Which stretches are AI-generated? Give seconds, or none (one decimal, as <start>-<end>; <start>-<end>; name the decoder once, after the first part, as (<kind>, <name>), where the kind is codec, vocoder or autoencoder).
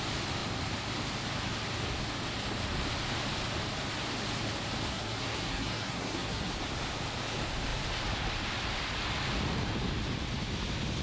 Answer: 4.9-6.5 (codec, SNAC)